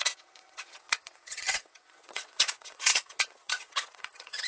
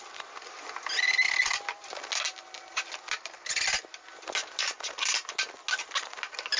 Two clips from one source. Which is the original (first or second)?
second